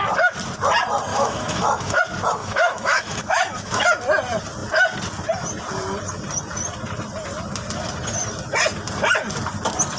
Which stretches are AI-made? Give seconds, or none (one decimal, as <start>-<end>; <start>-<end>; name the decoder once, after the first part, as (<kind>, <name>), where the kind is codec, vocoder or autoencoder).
1.1-2.0 (autoencoder, DAC-VAE); 2.4-4.0